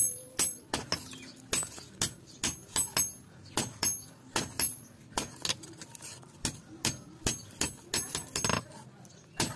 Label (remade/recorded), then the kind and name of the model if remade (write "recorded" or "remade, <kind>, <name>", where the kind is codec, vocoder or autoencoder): recorded